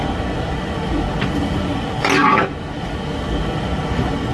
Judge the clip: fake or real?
real